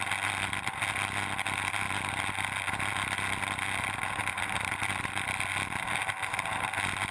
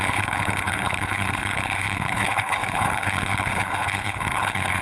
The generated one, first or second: second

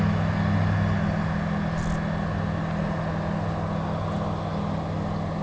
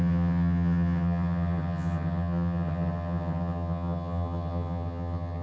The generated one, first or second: second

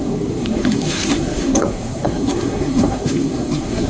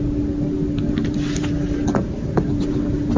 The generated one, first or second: first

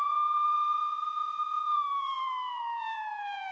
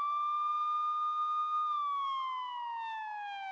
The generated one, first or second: first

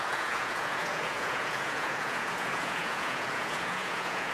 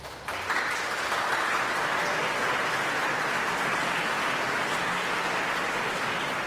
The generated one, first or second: first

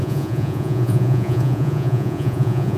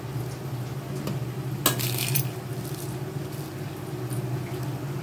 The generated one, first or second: first